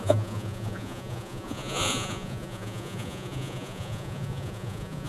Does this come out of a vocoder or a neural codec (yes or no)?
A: yes